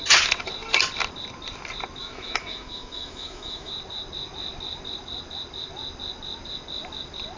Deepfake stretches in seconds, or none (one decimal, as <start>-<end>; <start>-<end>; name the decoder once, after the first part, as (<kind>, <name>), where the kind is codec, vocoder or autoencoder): 2.0-3.7 (autoencoder, DAC-VAE)